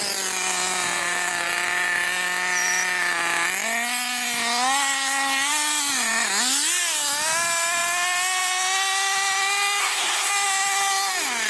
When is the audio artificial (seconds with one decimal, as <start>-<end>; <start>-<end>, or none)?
9.8-10.3